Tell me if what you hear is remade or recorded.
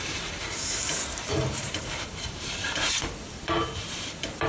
remade